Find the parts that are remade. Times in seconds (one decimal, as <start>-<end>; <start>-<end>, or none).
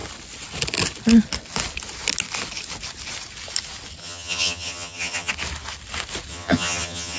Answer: 4.0-5.3; 6.3-7.2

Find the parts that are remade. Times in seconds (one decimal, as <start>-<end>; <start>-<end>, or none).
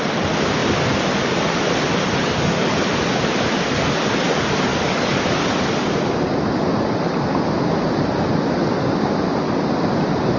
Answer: 2.2-2.7; 4.7-5.2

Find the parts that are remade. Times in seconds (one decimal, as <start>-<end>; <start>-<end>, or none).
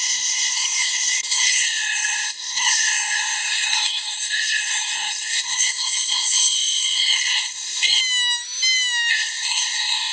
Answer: 0.0-8.0; 9.1-10.1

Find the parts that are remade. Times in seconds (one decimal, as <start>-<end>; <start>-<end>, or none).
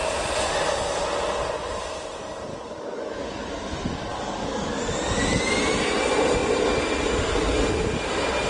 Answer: 2.5-3.5; 4.1-4.8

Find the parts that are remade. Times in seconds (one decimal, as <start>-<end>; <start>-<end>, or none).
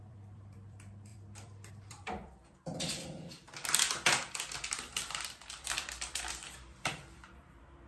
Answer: 0.0-7.9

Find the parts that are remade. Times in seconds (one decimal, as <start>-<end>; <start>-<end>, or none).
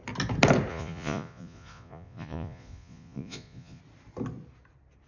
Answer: 0.7-3.8